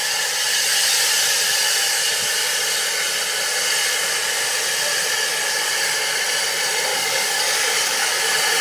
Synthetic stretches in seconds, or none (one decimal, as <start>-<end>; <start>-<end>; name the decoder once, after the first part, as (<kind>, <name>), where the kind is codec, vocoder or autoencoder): 6.9-8.2 (codec, DAC)